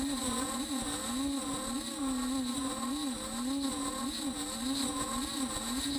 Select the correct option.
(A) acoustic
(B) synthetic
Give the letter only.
A